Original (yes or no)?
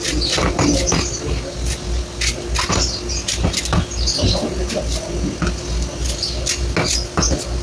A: yes